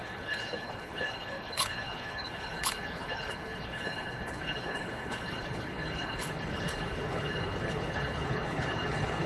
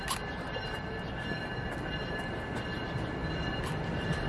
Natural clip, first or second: second